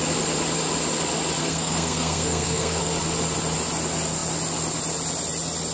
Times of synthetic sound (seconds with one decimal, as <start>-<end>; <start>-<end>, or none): 1.4-2.8